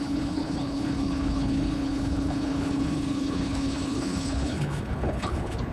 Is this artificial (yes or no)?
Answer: yes